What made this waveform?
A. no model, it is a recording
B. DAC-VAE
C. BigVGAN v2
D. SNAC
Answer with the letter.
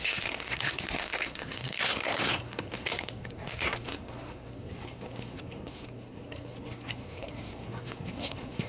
D